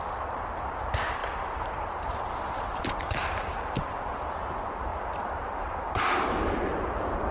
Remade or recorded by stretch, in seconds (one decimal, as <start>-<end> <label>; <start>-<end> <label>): 0.0-1.2 recorded; 1.2-4.3 remade; 4.3-4.9 recorded; 4.9-6.1 remade; 6.1-7.3 recorded